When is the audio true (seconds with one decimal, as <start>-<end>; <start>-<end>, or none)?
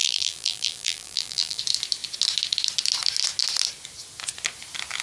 1.6-5.0